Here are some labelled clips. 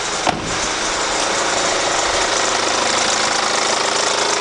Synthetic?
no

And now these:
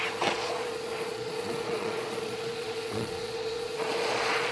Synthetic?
yes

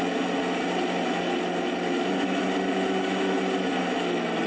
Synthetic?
no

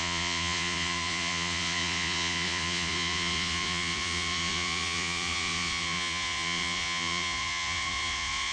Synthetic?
yes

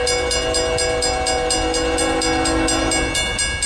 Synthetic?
no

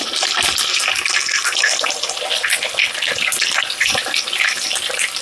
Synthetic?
no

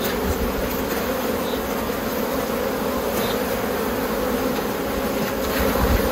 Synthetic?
no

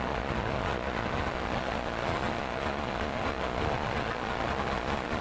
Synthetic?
yes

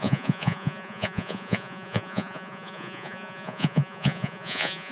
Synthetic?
yes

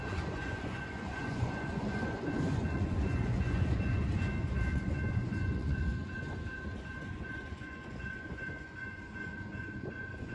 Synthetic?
yes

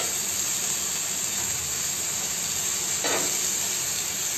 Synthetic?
no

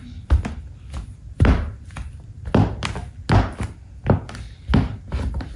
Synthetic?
no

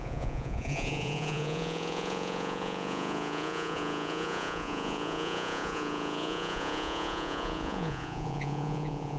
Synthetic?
yes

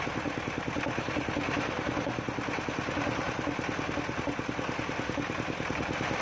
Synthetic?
no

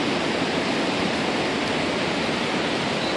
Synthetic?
no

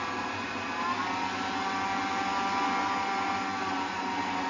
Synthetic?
no